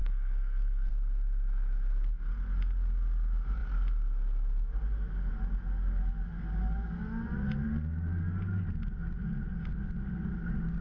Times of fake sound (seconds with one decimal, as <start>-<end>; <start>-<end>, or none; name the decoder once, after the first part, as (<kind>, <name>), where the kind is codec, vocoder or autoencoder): 0.0-0.9 (codec, SNAC)